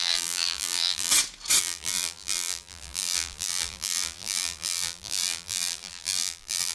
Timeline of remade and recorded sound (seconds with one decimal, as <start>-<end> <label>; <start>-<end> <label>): 0.0-1.1 remade; 1.1-1.6 recorded; 1.6-6.7 remade

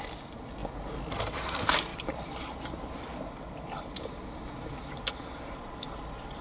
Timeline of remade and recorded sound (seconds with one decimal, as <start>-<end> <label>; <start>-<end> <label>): 0.0-0.6 remade; 0.6-1.2 recorded; 1.2-6.4 remade

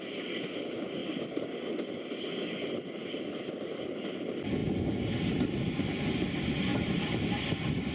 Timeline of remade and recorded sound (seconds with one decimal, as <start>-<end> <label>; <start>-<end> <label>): 0.0-1.0 remade; 1.0-2.5 recorded; 2.5-4.6 remade; 4.6-5.8 recorded; 5.8-7.9 remade

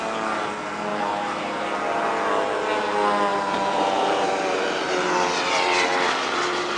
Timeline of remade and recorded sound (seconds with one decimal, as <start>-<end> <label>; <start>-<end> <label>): 0.0-0.9 recorded; 0.9-1.8 remade; 1.8-3.3 recorded; 3.3-4.9 remade; 4.9-6.8 recorded

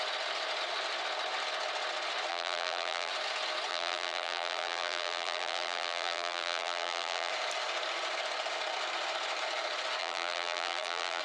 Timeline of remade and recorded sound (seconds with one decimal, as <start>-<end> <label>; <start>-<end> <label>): 0.0-2.3 recorded; 2.3-3.1 remade; 3.1-3.7 recorded; 3.7-7.3 remade; 7.3-10.0 recorded; 10.0-11.2 remade

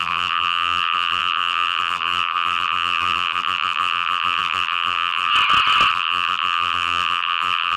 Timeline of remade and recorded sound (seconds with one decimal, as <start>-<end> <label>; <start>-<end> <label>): 0.0-5.3 remade; 5.3-5.9 recorded; 5.9-7.8 remade